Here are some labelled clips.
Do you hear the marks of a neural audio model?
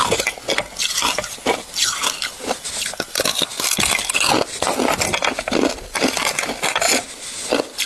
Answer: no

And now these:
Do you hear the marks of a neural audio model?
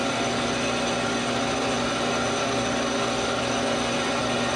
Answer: no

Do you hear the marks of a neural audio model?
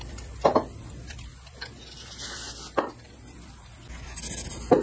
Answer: no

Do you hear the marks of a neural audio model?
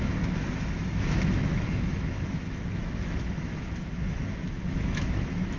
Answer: yes